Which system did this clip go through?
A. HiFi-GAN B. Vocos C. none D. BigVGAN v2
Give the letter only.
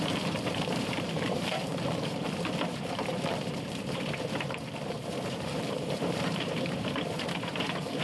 D